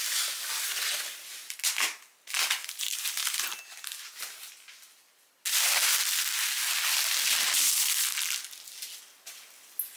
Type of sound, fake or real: real